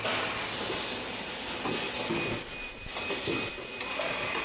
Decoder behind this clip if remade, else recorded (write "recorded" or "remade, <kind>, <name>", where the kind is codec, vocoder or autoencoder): recorded